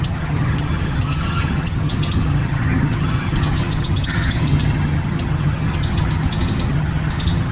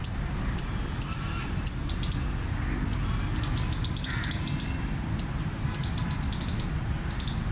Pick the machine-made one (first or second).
first